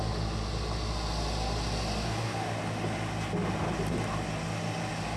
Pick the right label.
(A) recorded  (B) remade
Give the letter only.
A